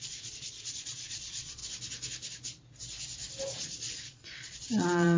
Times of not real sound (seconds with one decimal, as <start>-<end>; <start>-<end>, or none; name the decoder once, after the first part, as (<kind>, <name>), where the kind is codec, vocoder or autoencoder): 0.0-1.6 (vocoder, Vocos); 3.4-5.2